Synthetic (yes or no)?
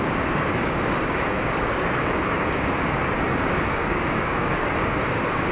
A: yes